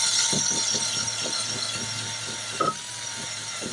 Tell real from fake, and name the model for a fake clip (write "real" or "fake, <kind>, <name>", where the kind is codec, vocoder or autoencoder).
real